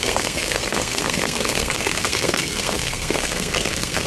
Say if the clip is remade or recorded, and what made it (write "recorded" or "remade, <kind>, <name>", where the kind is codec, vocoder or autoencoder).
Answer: remade, codec, SNAC